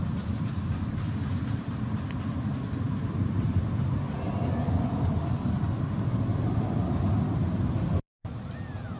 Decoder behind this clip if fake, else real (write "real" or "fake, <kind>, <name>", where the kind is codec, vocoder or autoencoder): fake, vocoder, BigVGAN v2